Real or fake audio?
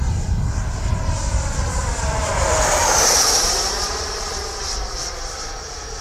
fake